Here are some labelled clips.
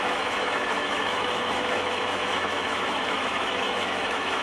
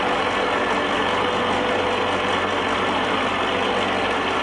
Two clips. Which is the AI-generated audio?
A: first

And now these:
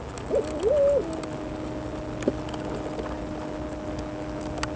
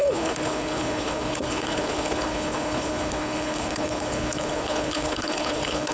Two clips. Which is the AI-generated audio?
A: second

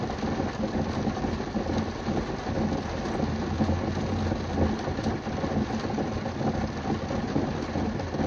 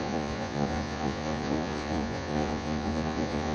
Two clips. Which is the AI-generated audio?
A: second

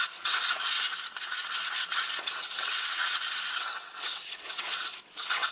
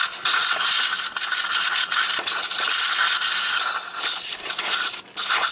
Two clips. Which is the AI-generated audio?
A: first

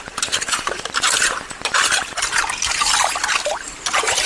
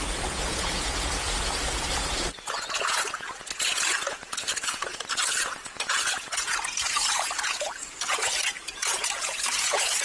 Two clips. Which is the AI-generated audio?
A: second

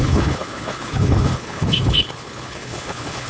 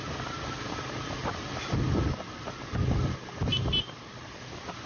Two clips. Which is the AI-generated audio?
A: first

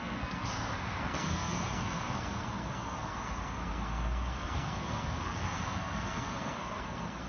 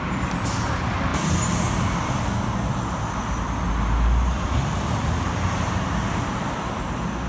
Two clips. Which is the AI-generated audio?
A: first